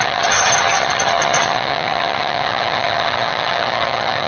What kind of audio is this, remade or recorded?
remade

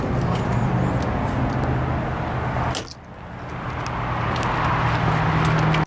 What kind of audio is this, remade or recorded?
recorded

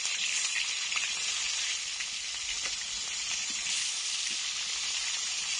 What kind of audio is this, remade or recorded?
recorded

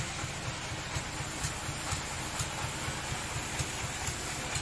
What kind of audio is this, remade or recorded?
recorded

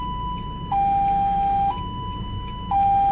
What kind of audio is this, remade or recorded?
remade